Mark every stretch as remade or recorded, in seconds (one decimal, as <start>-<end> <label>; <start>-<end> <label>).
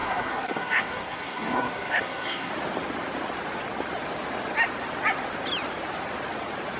0.0-2.5 remade; 2.5-6.8 recorded